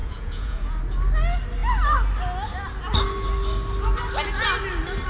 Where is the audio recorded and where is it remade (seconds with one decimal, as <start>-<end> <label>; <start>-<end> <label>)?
0.0-0.8 remade; 0.8-5.1 recorded